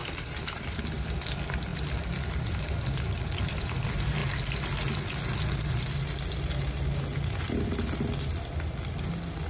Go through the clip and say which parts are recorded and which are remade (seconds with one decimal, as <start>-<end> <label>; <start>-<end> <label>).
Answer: 0.0-1.1 remade; 1.1-1.7 recorded; 1.7-3.7 remade; 3.7-9.5 recorded